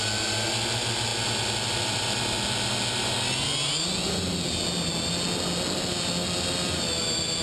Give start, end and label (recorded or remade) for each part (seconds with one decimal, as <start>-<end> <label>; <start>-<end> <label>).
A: 0.0-7.4 recorded